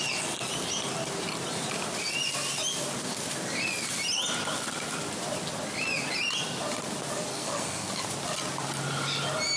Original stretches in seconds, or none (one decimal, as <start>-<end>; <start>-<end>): 0.0-7.3; 7.9-9.6